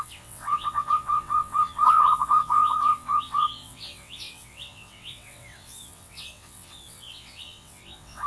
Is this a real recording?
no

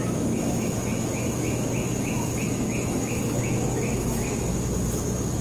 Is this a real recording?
no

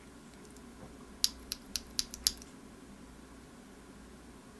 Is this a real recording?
yes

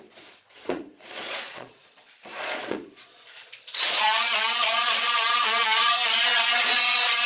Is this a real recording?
no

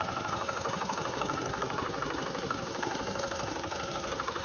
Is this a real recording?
no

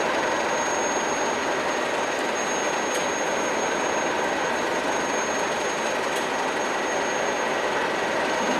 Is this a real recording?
yes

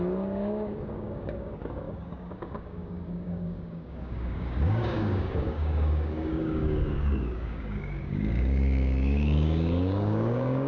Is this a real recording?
no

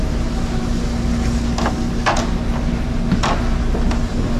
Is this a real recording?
yes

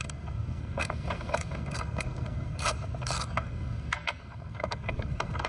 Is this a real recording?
no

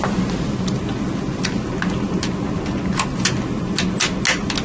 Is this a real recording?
yes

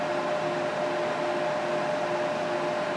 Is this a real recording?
yes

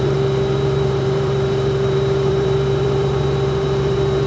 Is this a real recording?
no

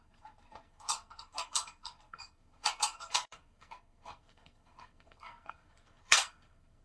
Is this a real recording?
no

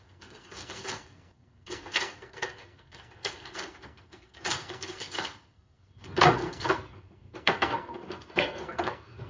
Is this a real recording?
no